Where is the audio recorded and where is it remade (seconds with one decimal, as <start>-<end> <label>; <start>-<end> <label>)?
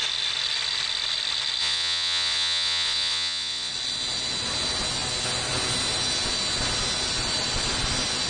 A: 0.0-1.6 recorded; 1.6-3.7 remade; 3.7-8.3 recorded